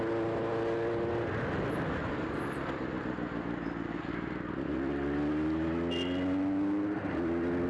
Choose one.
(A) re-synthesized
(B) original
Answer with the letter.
B